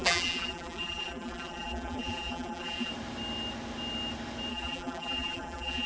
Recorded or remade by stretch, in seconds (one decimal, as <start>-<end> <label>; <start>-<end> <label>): 0.0-2.9 remade; 2.9-4.5 recorded; 4.5-5.9 remade